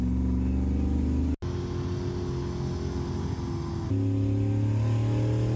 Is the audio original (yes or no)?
yes